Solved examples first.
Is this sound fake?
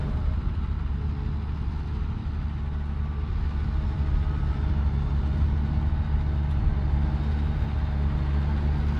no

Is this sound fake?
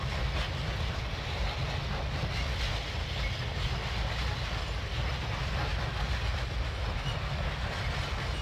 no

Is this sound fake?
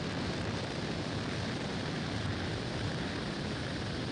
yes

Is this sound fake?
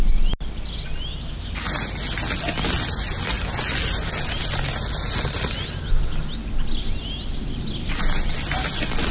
no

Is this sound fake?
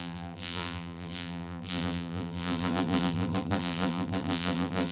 yes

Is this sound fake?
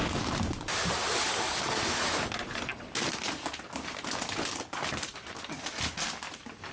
no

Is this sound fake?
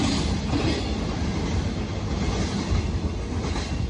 no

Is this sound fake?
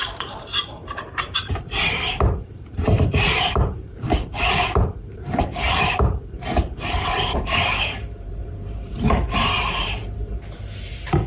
yes